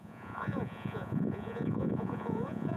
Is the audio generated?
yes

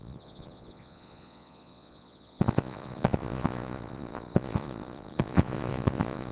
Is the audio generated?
yes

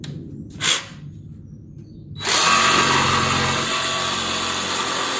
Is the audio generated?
no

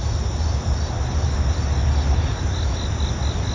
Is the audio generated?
no